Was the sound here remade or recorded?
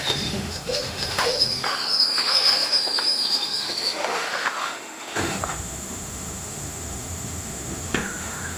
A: remade